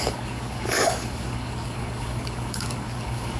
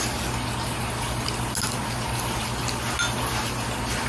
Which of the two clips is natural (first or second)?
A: second